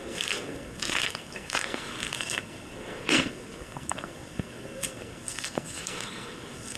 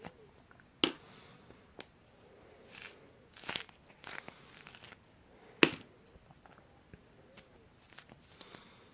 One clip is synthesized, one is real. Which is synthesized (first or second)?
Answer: first